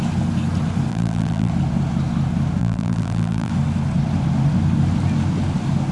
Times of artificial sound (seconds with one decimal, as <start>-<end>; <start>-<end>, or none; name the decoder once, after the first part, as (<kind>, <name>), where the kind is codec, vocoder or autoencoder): 0.9-1.5 (vocoder, BigVGAN v2); 2.6-3.5